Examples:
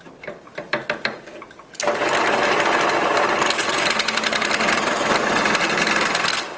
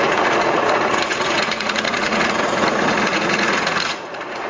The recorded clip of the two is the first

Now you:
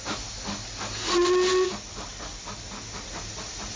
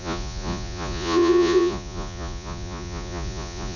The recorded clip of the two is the first